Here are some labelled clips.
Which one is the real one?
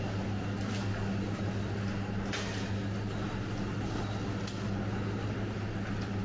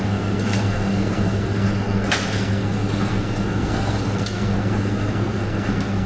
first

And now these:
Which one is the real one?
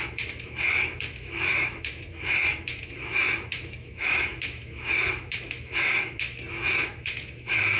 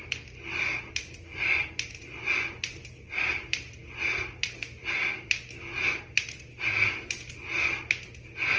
second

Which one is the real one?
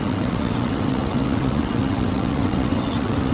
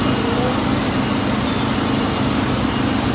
second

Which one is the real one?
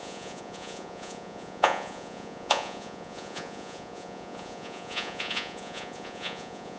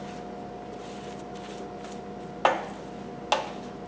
second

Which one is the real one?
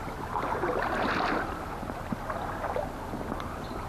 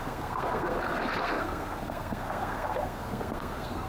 first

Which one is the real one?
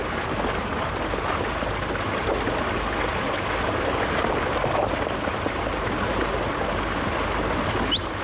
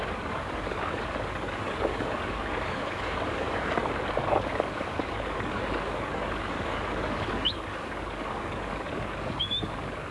first